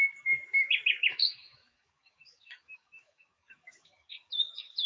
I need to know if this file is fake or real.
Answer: fake